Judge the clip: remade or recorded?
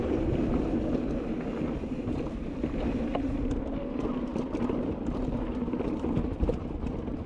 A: recorded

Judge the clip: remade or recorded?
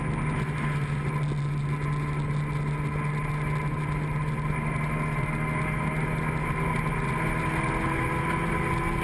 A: recorded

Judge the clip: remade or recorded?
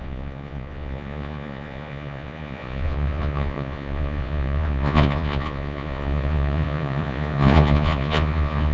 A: remade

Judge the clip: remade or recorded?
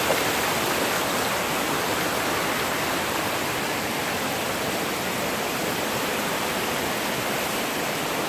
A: recorded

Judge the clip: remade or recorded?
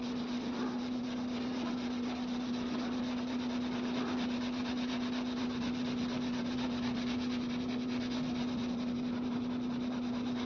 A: recorded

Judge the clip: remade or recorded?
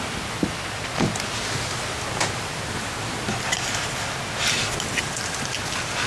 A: recorded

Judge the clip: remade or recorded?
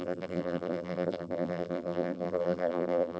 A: remade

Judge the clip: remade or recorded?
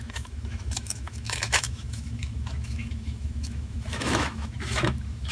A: remade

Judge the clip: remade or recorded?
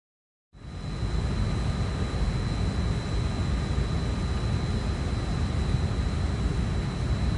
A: recorded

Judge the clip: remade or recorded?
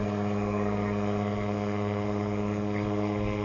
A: remade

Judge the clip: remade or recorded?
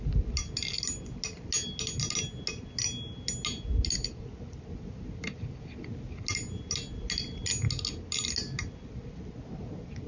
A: recorded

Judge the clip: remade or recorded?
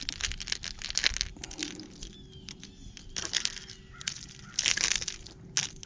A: recorded